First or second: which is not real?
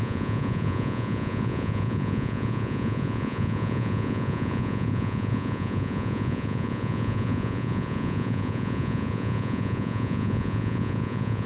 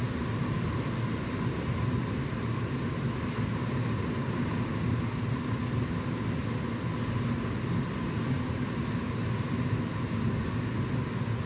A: first